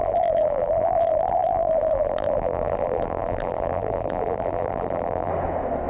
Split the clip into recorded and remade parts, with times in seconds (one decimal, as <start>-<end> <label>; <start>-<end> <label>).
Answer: 0.0-5.3 remade; 5.3-5.9 recorded